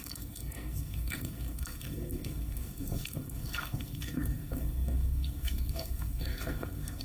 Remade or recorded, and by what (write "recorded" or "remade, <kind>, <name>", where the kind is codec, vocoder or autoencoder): remade, codec, SNAC